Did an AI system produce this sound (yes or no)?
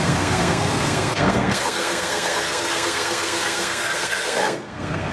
yes